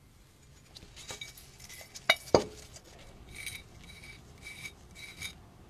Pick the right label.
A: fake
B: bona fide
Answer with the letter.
B